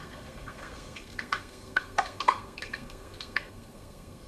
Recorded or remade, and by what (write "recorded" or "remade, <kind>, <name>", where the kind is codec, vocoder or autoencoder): remade, codec, SNAC